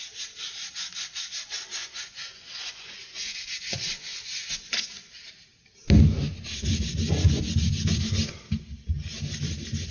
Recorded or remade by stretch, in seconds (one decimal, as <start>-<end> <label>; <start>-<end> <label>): 0.0-1.8 recorded; 1.8-5.1 remade; 5.1-9.9 recorded